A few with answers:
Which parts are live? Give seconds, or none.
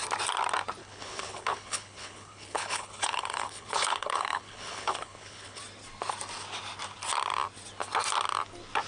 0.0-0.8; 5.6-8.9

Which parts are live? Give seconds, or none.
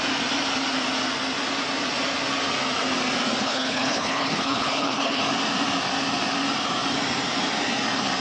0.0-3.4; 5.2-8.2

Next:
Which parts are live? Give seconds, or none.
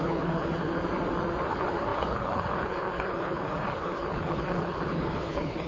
0.8-1.5